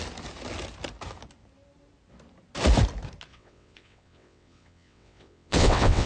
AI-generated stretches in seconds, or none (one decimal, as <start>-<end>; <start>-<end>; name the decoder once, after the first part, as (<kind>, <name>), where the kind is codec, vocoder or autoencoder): 3.3-6.1 (vocoder, WaveNeXt)